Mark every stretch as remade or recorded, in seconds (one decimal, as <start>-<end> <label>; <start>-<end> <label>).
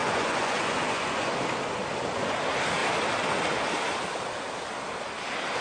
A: 0.0-1.3 remade; 1.3-5.6 recorded